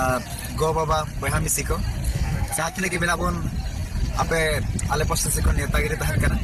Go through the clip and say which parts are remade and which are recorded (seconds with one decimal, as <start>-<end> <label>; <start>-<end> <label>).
0.0-2.1 recorded; 2.1-3.0 remade; 3.0-6.4 recorded